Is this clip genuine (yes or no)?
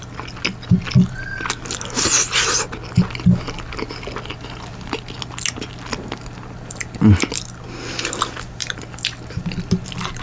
yes